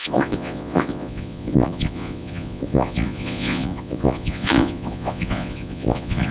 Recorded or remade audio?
remade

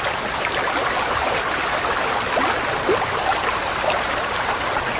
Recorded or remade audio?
recorded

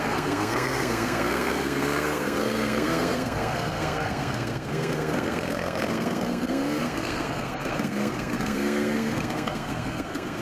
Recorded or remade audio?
remade